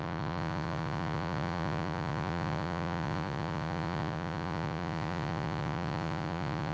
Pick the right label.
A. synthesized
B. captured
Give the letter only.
A